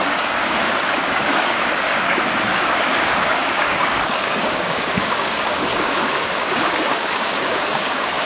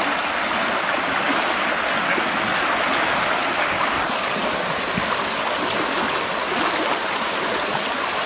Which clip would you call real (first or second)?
second